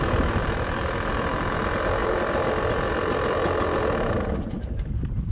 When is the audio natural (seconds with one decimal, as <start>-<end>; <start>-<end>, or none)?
0.0-0.4; 1.6-2.0

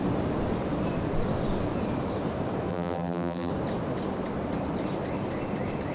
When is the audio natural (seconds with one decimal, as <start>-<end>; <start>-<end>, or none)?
0.0-2.7; 3.5-5.9

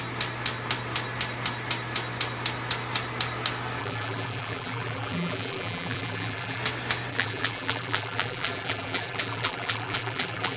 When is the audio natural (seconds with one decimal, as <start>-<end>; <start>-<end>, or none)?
0.0-3.8; 6.6-7.1

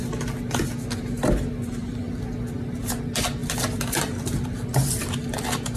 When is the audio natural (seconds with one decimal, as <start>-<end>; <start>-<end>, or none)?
0.0-3.4

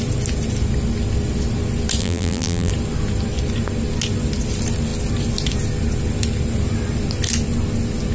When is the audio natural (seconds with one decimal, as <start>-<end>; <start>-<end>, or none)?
0.0-2.0; 2.7-8.1